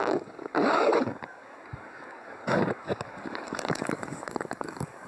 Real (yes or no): no